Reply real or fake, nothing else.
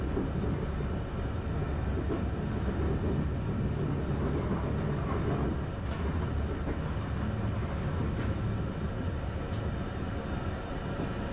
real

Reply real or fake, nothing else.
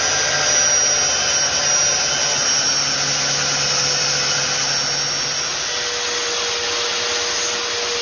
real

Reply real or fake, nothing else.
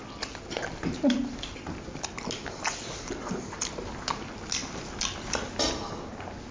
real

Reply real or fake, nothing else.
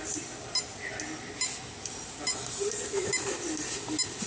real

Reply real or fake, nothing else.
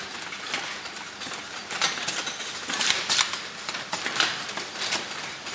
real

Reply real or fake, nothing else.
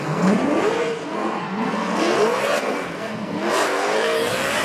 fake